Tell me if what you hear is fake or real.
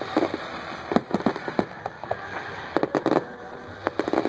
real